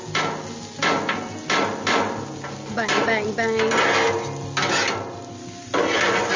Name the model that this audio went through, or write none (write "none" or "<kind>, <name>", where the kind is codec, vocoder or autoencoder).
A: none